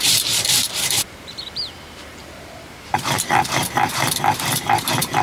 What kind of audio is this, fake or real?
fake